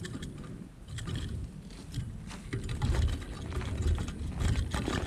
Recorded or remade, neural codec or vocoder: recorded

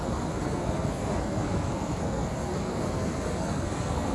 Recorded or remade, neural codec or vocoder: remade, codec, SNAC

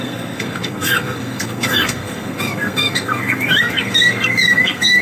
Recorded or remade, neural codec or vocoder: remade, codec, SNAC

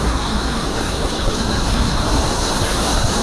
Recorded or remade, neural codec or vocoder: remade, codec, SNAC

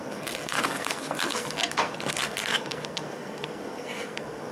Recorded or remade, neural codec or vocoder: remade, codec, SNAC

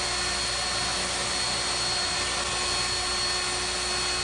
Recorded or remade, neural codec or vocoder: recorded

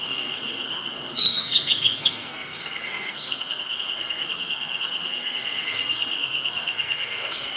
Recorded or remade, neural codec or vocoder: remade, codec, SNAC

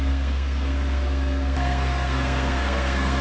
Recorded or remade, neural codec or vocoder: remade, codec, SNAC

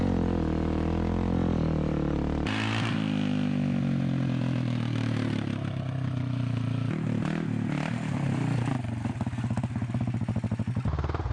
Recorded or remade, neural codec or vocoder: recorded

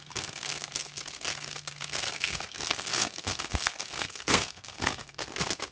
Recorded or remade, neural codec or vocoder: remade, codec, SNAC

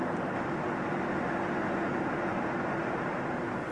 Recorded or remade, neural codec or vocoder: recorded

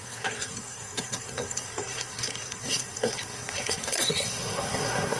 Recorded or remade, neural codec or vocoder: remade, codec, SNAC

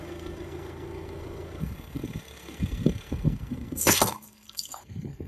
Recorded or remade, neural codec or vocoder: remade, codec, SNAC